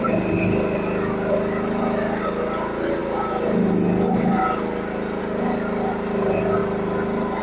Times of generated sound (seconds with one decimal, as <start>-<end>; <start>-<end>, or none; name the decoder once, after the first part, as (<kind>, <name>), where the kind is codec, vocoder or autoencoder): none